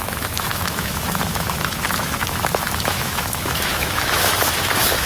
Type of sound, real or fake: fake